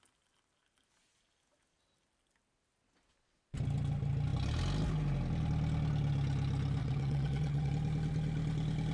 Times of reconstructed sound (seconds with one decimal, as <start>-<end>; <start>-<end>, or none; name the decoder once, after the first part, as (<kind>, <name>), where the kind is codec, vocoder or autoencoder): 6.8-7.7 (vocoder, WaveNeXt)